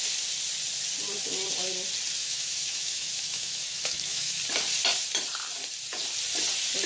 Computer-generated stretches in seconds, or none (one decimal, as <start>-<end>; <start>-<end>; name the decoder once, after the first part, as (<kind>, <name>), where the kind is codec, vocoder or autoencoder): 2.2-4.4 (autoencoder, DAC-VAE)